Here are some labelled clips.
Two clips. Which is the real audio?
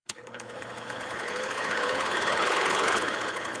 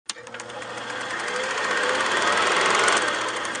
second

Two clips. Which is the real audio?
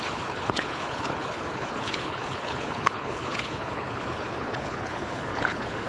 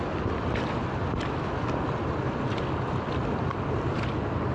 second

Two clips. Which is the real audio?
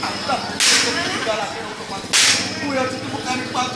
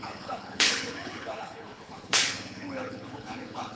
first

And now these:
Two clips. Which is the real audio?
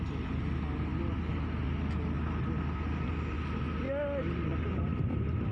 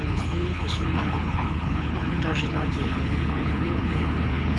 first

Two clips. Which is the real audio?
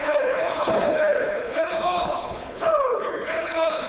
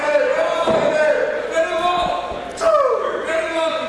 second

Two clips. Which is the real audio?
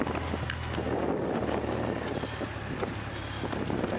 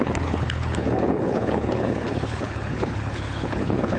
first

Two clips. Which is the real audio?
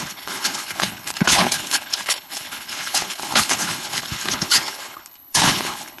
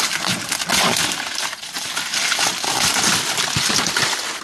second